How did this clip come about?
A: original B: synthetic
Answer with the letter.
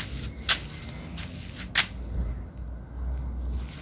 A